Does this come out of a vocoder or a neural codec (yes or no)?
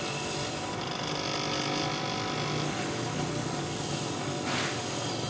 no